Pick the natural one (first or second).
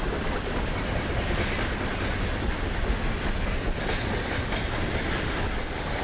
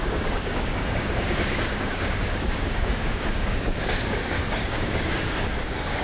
first